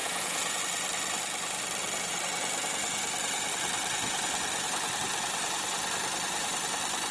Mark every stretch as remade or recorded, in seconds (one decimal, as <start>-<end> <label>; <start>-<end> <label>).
0.0-0.6 remade; 0.6-7.1 recorded